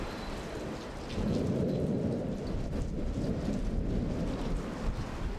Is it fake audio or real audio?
real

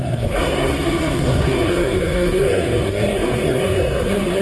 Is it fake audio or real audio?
fake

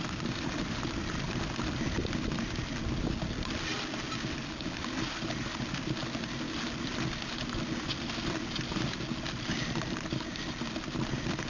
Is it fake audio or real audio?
real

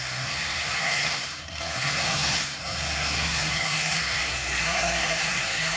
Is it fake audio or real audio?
fake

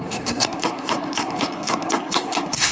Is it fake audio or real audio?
fake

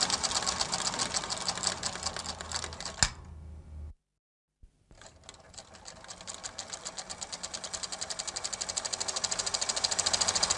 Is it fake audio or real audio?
real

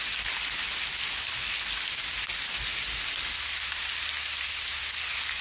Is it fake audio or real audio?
real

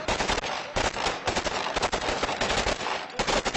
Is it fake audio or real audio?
real